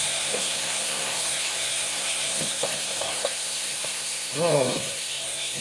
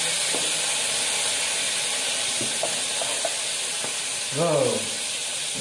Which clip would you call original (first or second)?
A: second